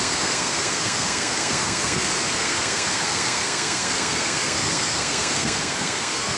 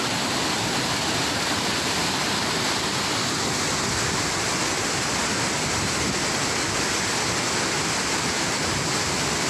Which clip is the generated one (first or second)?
first